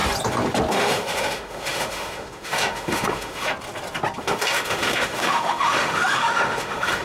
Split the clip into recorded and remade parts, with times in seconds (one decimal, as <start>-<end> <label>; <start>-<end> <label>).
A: 0.0-0.7 recorded; 0.7-3.5 remade; 3.5-4.2 recorded; 4.2-7.0 remade